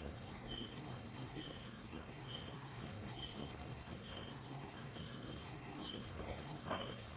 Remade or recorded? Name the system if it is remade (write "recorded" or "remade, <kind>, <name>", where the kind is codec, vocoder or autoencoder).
remade, codec, SNAC